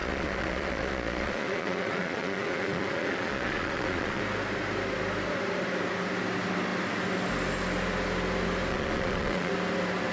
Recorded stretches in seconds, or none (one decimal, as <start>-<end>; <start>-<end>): 4.2-8.7; 9.5-10.1